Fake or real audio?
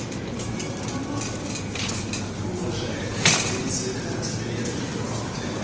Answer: real